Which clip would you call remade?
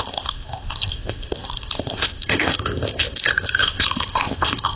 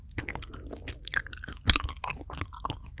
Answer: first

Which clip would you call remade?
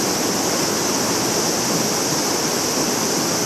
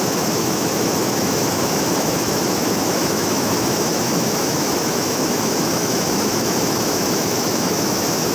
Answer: second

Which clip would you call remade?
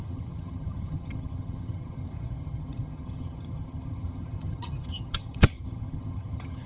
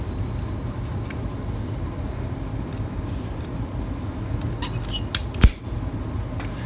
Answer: first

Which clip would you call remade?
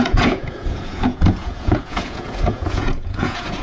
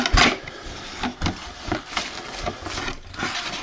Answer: first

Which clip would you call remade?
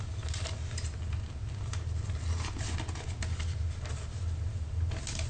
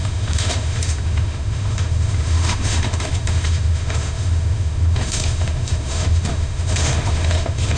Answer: second